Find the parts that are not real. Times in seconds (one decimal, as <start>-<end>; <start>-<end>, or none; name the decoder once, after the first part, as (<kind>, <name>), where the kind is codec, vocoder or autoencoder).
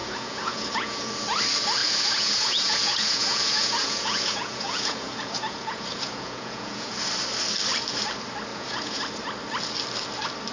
0.0-1.1 (vocoder, Vocos); 1.8-7.0; 8.5-9.0